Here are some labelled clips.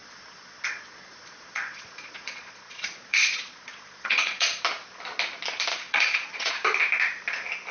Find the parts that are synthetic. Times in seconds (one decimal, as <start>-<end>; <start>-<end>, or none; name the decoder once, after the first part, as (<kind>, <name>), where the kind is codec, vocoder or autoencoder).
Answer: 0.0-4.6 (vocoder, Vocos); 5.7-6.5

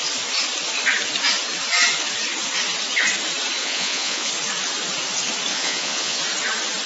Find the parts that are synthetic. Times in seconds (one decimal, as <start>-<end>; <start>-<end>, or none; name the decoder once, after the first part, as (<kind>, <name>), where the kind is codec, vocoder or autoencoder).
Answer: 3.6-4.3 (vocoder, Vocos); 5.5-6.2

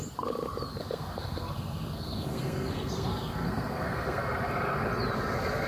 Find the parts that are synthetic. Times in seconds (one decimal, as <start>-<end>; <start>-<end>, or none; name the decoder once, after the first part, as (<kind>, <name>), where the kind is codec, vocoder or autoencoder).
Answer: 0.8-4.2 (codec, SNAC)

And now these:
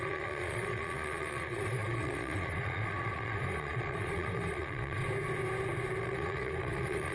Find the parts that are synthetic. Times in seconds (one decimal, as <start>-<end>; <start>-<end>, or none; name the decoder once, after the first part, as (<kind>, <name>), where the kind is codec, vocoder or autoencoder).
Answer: 0.0-5.0 (vocoder, Vocos); 6.0-7.1

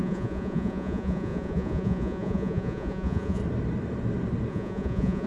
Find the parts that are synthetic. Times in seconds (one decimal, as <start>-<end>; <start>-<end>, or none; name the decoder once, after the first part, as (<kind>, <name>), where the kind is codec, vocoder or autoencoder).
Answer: 0.0-3.4 (vocoder, Vocos); 4.5-5.3

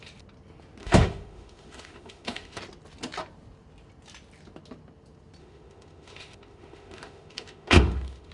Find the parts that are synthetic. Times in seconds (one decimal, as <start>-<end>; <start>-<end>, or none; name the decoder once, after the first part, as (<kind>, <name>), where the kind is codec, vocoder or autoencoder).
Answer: 0.8-2.6 (autoencoder, DAC-VAE); 5.4-8.3